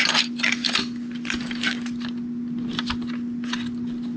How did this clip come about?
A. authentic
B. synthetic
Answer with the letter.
A